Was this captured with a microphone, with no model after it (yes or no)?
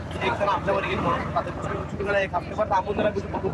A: no